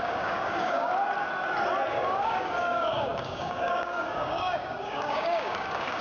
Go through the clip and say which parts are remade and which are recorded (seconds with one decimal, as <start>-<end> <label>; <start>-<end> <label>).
0.0-0.9 remade; 0.9-1.9 recorded; 1.9-6.0 remade